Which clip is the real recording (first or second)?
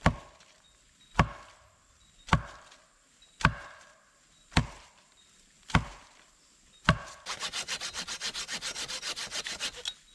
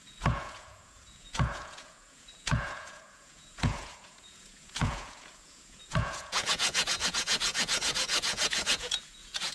first